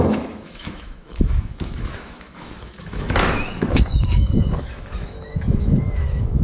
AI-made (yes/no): yes